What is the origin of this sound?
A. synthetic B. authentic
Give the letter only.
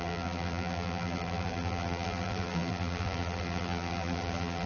A